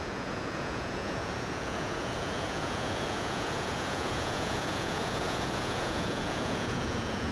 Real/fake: fake